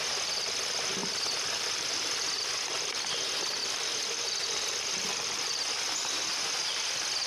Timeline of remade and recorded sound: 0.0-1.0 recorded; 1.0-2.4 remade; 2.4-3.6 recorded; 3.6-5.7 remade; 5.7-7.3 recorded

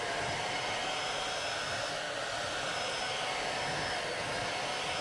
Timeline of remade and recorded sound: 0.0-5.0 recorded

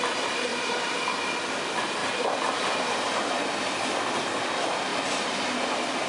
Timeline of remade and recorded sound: 0.0-0.5 recorded; 0.5-1.2 remade; 1.2-6.1 recorded

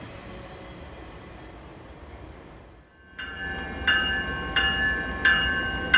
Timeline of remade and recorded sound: 0.0-6.0 recorded